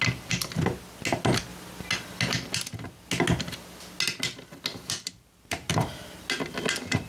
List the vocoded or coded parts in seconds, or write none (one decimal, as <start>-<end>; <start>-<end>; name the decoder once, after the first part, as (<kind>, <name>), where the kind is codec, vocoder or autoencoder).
4.7-5.7 (vocoder, BigVGAN v2)